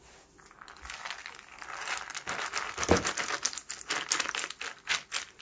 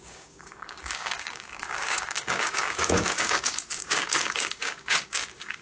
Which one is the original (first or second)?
first